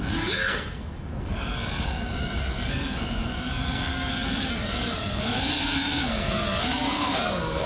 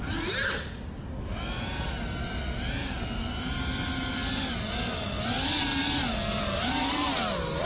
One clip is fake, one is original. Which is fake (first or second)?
first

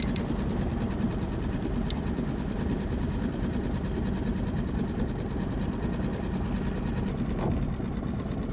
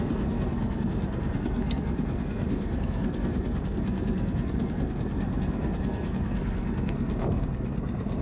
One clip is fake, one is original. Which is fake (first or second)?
second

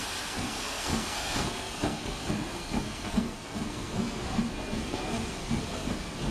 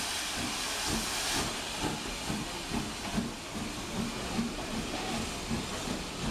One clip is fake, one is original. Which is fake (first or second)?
first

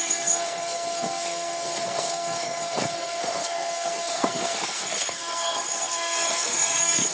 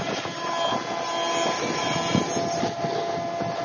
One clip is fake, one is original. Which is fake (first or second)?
first